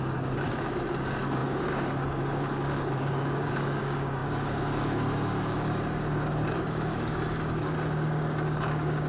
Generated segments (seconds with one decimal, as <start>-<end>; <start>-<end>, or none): 0.0-9.1